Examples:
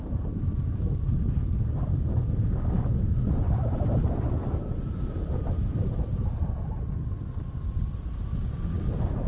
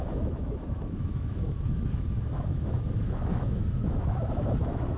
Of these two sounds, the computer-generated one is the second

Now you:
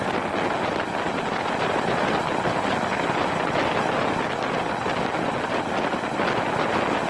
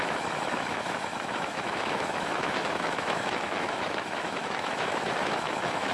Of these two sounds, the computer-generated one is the second